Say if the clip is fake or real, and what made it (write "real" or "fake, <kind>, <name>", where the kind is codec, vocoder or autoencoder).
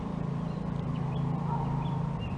fake, vocoder, BigVGAN v2